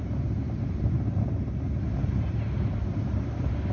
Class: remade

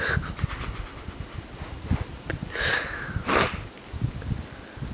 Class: recorded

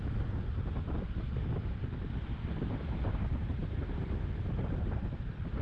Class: recorded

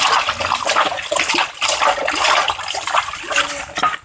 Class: recorded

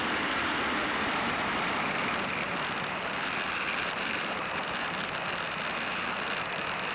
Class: remade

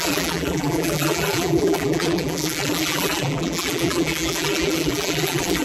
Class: remade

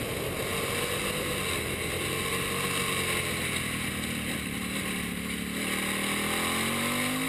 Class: recorded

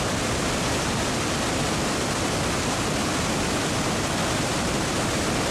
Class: recorded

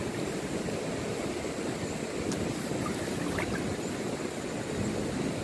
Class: recorded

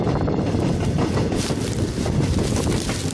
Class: recorded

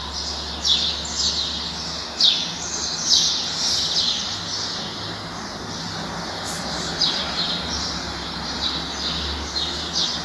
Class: recorded